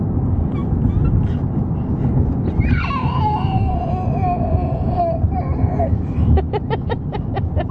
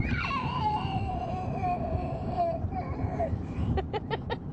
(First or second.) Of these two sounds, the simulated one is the second